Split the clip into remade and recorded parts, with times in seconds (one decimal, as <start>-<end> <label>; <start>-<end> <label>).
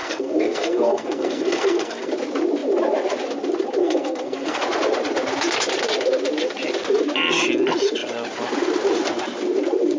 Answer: 0.0-2.1 remade; 2.1-3.8 recorded; 3.8-4.6 remade; 4.6-10.0 recorded